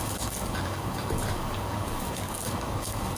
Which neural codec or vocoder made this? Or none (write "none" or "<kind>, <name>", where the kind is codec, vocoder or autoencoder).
codec, DAC